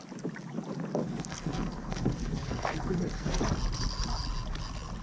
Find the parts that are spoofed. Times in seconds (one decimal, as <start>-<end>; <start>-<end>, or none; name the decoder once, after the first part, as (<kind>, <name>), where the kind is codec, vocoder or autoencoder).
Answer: 1.0-3.4 (codec, SNAC)